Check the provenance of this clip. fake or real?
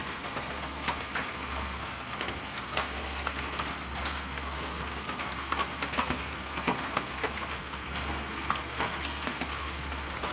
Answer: fake